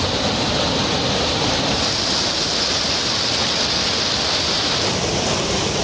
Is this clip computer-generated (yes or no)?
no